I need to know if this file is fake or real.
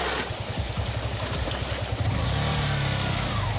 real